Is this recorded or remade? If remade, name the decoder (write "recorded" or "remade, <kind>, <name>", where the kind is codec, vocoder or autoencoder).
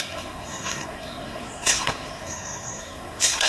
remade, codec, SNAC